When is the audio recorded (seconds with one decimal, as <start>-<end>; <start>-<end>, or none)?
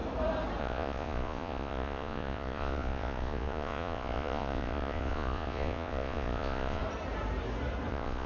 0.0-0.6; 6.8-7.9